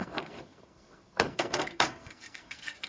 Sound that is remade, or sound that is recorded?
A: remade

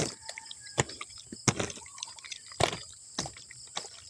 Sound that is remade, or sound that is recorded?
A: recorded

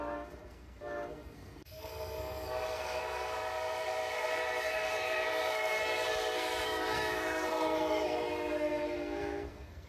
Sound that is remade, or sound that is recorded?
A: remade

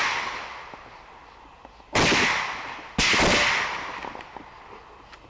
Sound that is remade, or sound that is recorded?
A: recorded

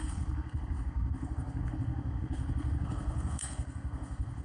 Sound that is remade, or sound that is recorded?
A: remade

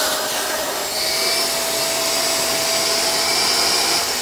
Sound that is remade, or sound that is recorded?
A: recorded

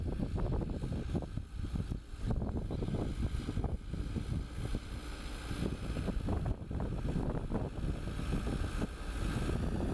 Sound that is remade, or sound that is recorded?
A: recorded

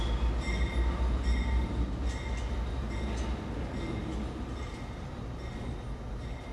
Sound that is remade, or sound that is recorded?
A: recorded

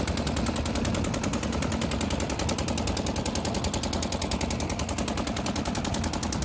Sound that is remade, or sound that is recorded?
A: recorded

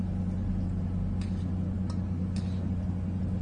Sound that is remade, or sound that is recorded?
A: recorded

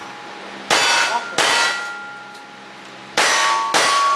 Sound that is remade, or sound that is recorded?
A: recorded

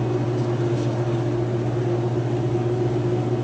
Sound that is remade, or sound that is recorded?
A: recorded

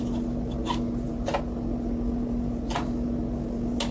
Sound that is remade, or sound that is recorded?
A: recorded